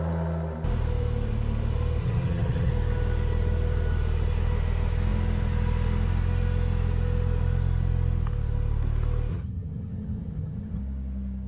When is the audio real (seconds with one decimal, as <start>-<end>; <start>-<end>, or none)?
0.0-2.0; 2.7-9.3; 10.8-11.5